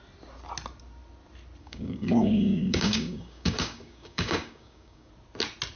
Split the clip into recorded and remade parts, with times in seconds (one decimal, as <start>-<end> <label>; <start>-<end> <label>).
0.0-1.6 recorded; 1.6-5.1 remade; 5.1-5.8 recorded